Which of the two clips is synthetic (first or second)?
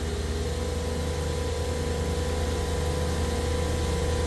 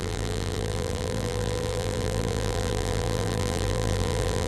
second